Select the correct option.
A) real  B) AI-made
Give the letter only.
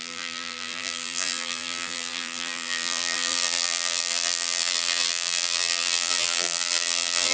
B